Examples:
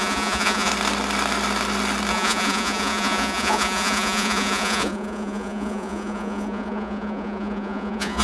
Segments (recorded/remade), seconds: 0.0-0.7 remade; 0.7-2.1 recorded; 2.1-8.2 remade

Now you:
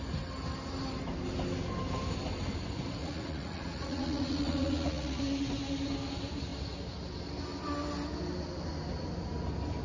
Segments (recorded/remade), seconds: 0.0-3.0 recorded; 3.0-5.2 remade; 5.2-9.8 recorded

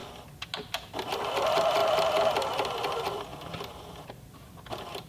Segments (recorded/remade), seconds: 0.0-0.7 recorded; 0.7-1.8 remade; 1.8-2.9 recorded; 2.9-5.1 remade

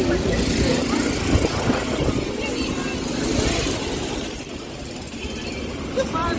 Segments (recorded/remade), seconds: 0.0-6.4 recorded

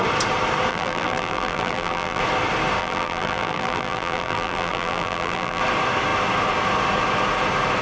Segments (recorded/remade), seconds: 0.0-0.7 recorded; 0.7-2.2 remade; 2.2-2.8 recorded; 2.8-5.6 remade; 5.6-7.8 recorded